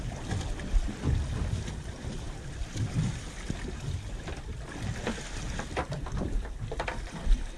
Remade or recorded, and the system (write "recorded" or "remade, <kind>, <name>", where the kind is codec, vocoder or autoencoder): recorded